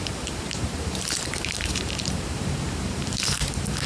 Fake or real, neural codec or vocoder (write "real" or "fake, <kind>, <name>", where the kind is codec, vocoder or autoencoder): fake, vocoder, BigVGAN v2